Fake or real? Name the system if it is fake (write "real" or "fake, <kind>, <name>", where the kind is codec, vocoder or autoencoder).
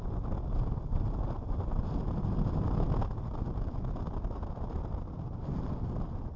real